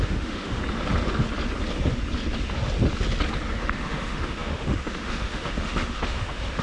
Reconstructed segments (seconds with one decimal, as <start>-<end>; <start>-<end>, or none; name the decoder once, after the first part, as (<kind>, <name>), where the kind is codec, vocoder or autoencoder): 0.0-0.6 (autoencoder, DAC-VAE); 3.6-6.6